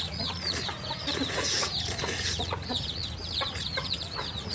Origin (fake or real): fake